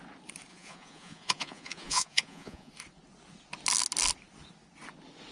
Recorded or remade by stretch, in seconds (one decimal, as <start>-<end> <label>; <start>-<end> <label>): 0.0-0.5 recorded; 0.5-2.7 remade; 2.7-5.3 recorded